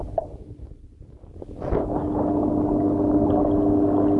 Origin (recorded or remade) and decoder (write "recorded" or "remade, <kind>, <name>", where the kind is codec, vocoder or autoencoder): recorded